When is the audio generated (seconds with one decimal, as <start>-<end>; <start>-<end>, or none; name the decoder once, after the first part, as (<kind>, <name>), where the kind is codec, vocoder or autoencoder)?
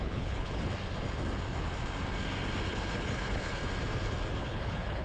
0.0-0.7 (codec, HILCodec); 2.7-3.6; 4.4-5.0